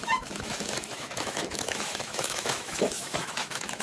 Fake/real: fake